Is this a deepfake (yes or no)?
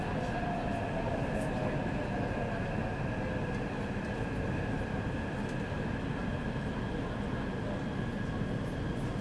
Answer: no